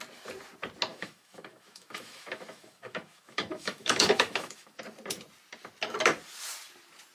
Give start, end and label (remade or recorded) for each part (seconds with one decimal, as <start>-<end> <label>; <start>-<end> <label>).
0.0-0.9 recorded; 0.9-4.8 remade; 4.8-7.1 recorded